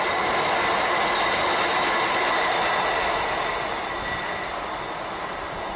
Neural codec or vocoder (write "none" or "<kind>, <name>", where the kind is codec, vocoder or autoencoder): none